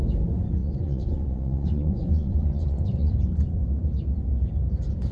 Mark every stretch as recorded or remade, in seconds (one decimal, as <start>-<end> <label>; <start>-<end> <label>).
0.0-0.6 recorded; 0.6-3.1 remade; 3.1-5.1 recorded